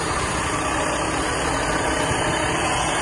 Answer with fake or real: real